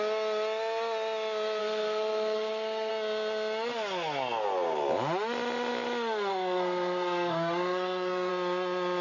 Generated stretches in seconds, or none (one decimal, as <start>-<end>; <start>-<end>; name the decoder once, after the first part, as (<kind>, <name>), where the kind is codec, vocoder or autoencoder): 1.6-2.9 (codec, SNAC); 6.3-8.3